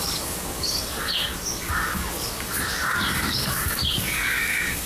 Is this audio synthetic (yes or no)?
yes